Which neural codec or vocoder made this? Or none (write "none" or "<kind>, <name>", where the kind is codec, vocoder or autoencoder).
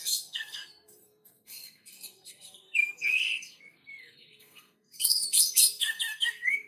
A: codec, SNAC